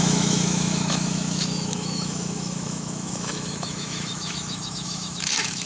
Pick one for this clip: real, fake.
fake